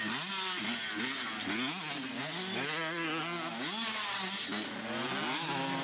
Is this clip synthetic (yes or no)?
no